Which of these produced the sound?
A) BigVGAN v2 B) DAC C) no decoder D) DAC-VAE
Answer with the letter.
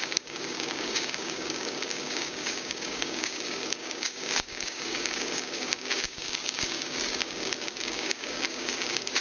B